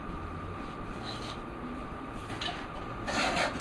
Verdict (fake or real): fake